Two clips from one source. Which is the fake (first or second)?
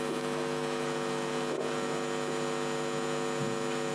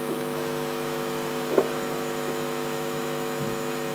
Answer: second